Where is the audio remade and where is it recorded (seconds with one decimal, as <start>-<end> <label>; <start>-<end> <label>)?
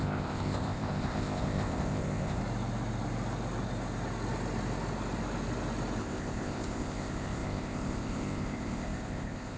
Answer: 0.0-2.4 remade; 2.4-6.0 recorded; 6.0-9.6 remade